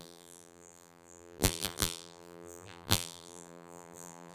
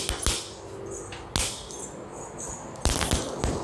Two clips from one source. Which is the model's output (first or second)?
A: first